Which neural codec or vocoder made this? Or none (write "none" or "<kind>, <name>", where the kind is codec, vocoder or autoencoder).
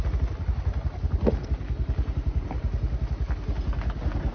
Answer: none